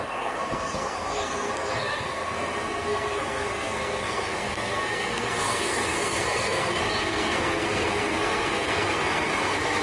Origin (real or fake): fake